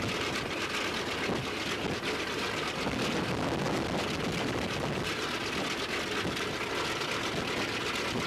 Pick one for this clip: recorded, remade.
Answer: recorded